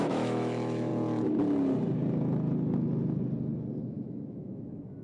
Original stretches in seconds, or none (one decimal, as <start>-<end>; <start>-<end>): 0.9-3.8